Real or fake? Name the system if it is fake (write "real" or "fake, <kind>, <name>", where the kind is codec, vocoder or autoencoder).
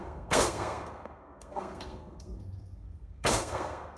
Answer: fake, codec, SNAC